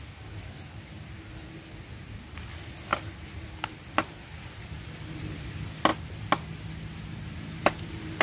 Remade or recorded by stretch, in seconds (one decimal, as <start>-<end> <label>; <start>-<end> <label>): 0.0-8.2 recorded